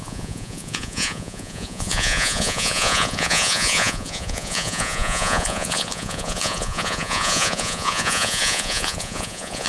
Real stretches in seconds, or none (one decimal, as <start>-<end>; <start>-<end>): none